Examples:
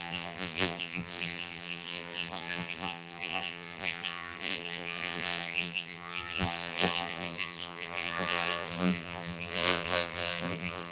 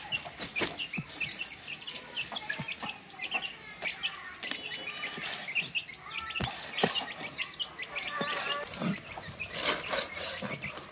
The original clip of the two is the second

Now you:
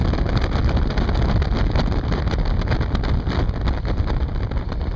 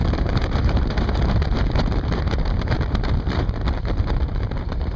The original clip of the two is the first